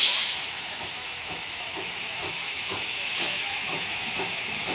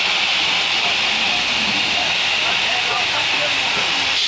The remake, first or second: first